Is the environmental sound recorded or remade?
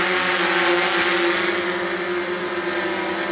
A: recorded